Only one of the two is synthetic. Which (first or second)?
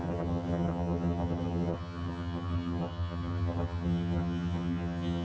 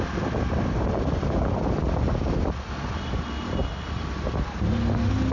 first